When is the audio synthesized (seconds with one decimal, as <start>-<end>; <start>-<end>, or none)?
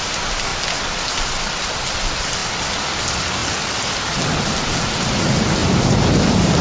5.6-6.6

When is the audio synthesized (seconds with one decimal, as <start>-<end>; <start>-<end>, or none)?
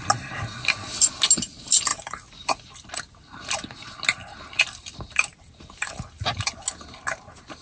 none